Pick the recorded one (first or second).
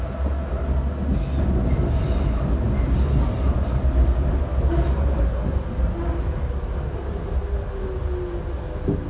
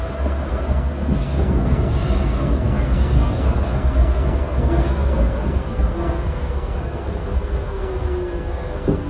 first